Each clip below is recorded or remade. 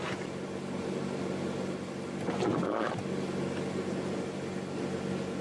recorded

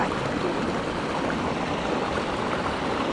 recorded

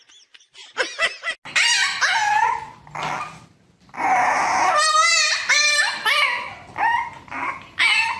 recorded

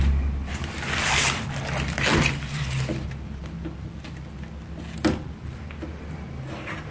remade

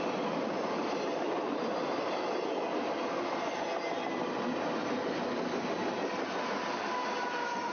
recorded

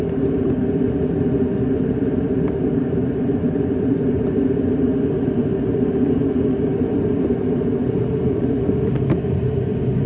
remade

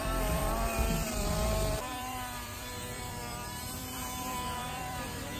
remade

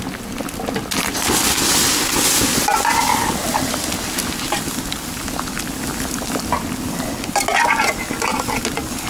recorded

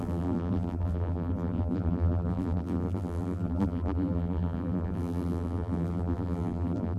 remade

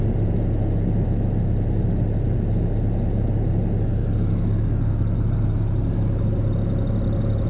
recorded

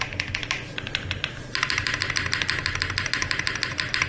recorded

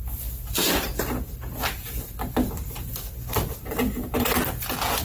recorded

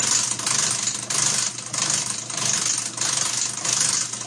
recorded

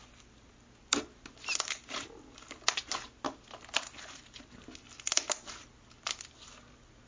recorded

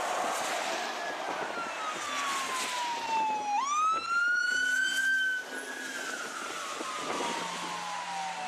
recorded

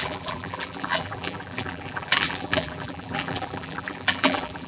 remade